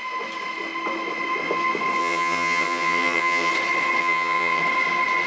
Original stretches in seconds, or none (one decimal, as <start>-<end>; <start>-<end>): 0.0-2.0; 3.5-4.0; 4.6-5.3